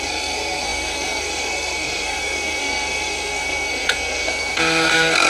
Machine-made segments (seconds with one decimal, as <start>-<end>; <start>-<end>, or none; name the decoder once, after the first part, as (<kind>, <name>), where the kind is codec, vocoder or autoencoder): 0.0-5.3 (codec, SNAC)